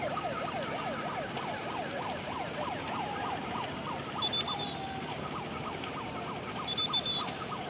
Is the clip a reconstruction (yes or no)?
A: no